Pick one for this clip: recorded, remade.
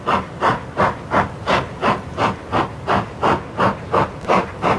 recorded